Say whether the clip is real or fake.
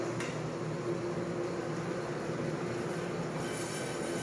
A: real